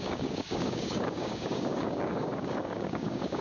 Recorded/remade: remade